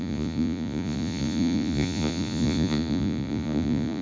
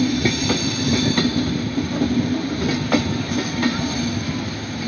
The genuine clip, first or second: second